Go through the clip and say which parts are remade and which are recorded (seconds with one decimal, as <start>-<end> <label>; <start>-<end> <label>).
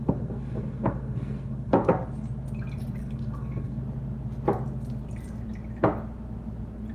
0.0-1.9 remade; 1.9-3.0 recorded; 3.0-3.8 remade; 3.8-6.9 recorded